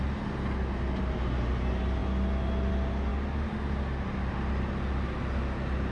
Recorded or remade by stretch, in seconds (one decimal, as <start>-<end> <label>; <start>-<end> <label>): 0.0-5.9 recorded